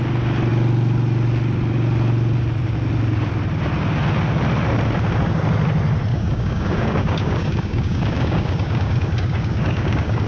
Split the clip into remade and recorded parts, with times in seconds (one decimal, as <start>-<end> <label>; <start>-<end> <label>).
0.0-6.1 recorded; 6.1-10.3 remade